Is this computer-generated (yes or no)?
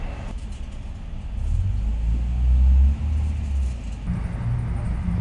no